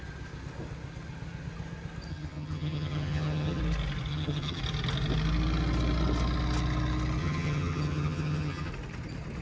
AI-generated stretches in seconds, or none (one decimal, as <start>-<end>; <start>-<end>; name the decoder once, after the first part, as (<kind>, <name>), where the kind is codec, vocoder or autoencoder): 2.1-3.6 (vocoder, HiFi-GAN); 4.1-4.6; 7.2-8.7